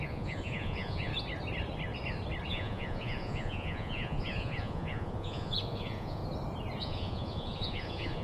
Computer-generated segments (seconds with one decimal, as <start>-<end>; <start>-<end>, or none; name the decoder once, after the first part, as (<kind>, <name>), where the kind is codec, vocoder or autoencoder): 0.0-1.1 (vocoder, Vocos); 2.5-6.2; 6.8-8.2